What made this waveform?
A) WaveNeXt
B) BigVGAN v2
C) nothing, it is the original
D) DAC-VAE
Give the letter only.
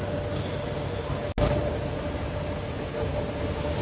C